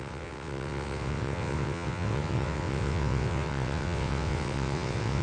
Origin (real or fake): fake